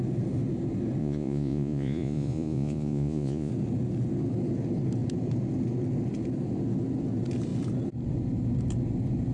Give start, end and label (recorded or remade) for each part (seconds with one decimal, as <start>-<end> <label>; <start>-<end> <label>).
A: 0.0-1.0 recorded; 1.0-3.5 remade; 3.5-9.3 recorded